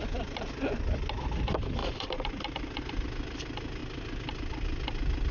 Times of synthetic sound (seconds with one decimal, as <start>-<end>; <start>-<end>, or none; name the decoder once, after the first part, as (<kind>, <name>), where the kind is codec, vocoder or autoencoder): 1.8-3.0 (vocoder, BigVGAN v2)